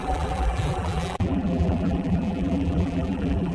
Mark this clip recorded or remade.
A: remade